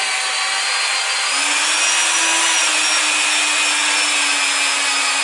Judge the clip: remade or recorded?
recorded